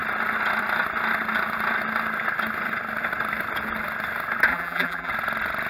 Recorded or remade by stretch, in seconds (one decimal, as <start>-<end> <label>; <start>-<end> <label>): 0.0-4.5 recorded; 4.5-5.1 remade; 5.1-5.7 recorded